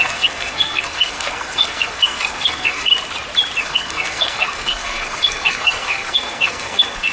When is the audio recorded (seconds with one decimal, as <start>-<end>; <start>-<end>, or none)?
2.9-3.6